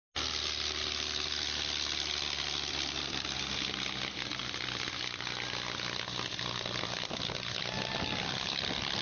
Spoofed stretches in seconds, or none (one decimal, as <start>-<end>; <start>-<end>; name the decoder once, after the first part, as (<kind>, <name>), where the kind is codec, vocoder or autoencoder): none